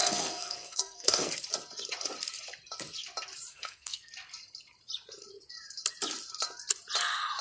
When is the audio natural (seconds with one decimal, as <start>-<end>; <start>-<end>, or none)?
1.3-3.5; 4.1-7.4